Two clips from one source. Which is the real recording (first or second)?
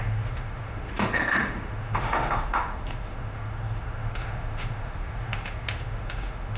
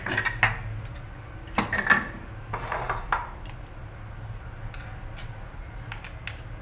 second